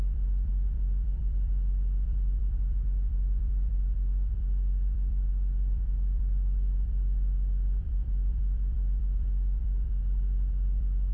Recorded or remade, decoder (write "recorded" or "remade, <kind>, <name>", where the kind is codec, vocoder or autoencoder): remade, vocoder, BigVGAN v2